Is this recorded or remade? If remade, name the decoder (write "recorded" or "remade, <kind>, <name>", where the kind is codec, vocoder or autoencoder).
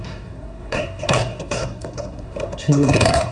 remade, codec, SNAC